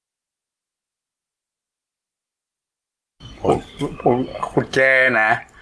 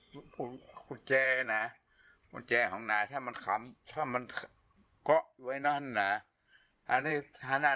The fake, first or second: second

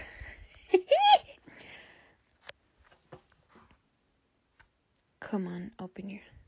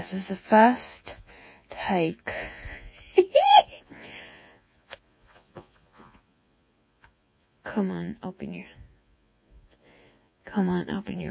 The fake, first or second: second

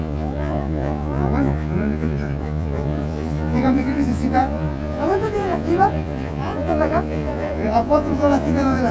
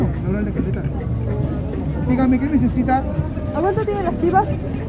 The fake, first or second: first